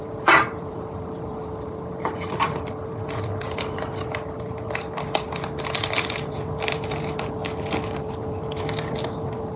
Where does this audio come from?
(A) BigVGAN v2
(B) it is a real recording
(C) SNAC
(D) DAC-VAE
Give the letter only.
A